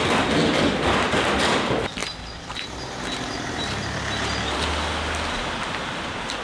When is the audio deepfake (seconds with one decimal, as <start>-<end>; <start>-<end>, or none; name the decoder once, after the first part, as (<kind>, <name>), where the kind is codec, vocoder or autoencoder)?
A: 2.0-4.7 (vocoder, BigVGAN v2)